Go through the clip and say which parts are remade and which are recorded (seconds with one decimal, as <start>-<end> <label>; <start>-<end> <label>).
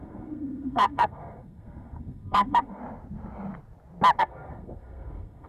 0.0-2.8 remade; 2.8-4.2 recorded; 4.2-5.5 remade